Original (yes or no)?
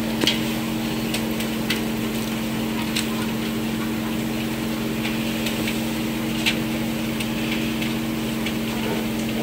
yes